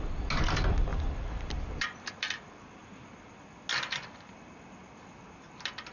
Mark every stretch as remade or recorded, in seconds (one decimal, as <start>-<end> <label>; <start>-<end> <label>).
0.0-5.9 recorded